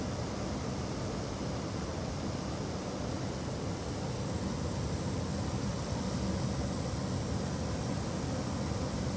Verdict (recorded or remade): recorded